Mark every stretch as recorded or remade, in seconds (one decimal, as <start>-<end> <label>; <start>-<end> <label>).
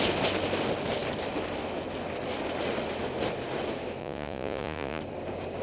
0.0-4.0 recorded; 4.0-5.0 remade; 5.0-5.6 recorded